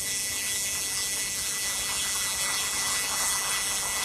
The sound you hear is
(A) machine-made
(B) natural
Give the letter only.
B